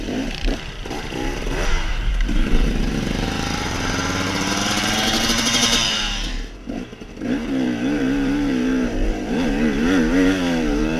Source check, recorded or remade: remade